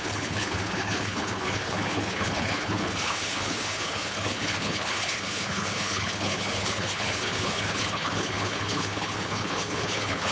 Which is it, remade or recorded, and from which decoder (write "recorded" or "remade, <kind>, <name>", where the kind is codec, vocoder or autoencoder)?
remade, codec, HILCodec